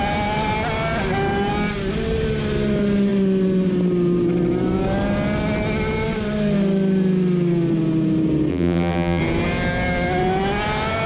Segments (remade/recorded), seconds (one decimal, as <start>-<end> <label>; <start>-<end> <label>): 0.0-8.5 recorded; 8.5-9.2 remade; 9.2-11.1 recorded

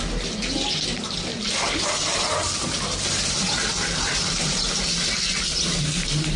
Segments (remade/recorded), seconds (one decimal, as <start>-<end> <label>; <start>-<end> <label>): 0.0-1.3 recorded; 1.3-5.1 remade; 5.1-6.4 recorded

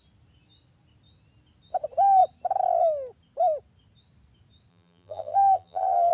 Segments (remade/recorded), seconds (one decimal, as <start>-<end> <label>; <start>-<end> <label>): 0.0-4.7 recorded; 4.7-6.1 remade